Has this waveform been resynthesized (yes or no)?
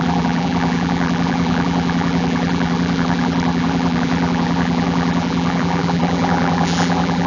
yes